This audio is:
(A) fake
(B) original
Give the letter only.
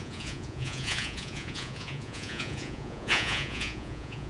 A